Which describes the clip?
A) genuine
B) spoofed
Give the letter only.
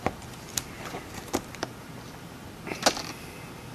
A